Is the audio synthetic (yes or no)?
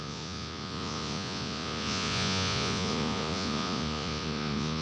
yes